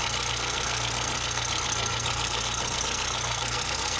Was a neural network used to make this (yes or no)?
yes